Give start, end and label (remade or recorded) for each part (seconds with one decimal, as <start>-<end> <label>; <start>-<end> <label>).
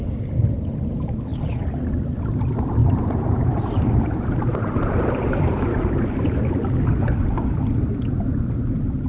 0.0-2.8 recorded; 2.8-6.2 remade; 6.2-9.1 recorded